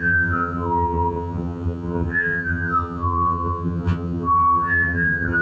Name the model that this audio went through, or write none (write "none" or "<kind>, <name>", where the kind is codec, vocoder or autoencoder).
vocoder, HiFi-GAN